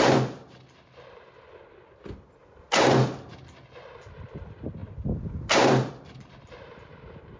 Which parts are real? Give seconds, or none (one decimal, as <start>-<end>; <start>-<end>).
0.0-7.4